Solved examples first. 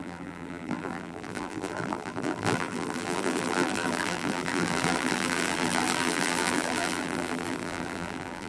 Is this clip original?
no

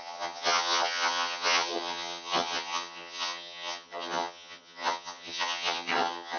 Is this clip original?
no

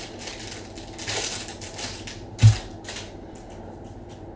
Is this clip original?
yes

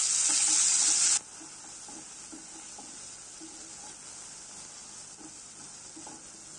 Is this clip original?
yes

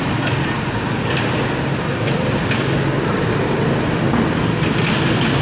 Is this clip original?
yes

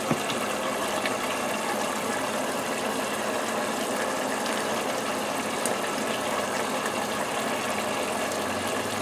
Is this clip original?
yes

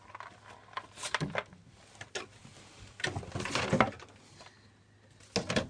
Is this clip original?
yes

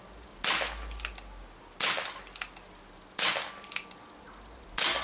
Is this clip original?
yes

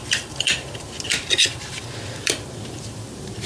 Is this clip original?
no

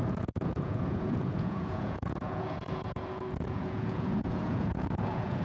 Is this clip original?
no